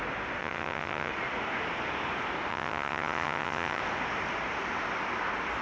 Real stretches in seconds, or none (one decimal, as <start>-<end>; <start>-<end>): 0.0-0.4; 1.1-2.5; 3.8-5.6